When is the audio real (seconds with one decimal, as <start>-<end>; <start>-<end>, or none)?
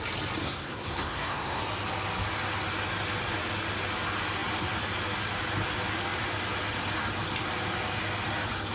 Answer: 0.0-0.4; 1.6-8.7